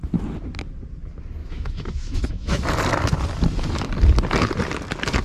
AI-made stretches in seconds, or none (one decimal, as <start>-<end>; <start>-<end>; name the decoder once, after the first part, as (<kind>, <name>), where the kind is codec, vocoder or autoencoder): 1.4-2.6 (autoencoder, DAC-VAE)